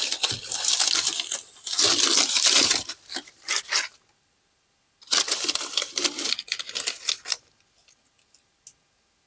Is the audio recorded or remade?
recorded